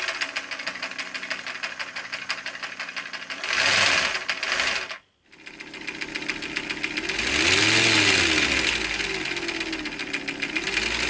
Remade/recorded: recorded